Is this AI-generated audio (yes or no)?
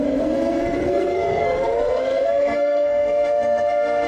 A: yes